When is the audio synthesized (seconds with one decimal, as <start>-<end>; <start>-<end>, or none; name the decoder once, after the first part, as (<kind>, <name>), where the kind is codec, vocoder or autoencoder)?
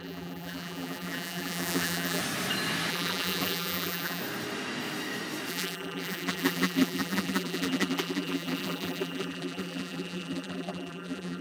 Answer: 0.0-2.2 (vocoder, BigVGAN v2); 2.9-4.2; 5.5-11.4